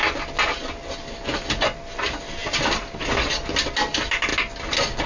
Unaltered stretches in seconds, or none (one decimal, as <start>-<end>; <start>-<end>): 0.0-5.1